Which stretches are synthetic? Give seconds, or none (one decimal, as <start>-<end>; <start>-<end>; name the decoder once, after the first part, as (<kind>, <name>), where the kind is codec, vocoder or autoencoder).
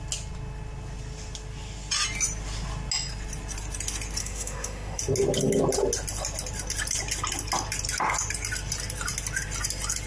4.2-5.0 (autoencoder, DAC-VAE)